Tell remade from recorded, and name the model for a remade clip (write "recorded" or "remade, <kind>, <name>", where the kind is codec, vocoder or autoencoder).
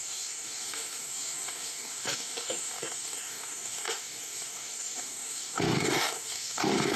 remade, codec, DAC